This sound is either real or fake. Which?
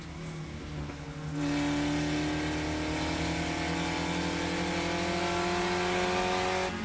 real